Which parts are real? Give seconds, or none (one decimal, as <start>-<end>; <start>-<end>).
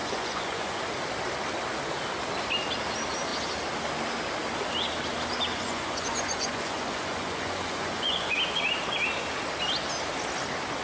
0.8-5.5; 8.4-10.8